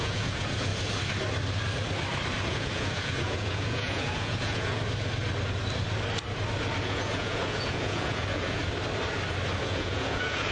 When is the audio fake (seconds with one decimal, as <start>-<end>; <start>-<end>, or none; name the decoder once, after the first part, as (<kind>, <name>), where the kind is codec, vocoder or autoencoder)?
0.0-0.7 (vocoder, Vocos); 2.5-4.8; 6.8-8.6; 9.6-10.5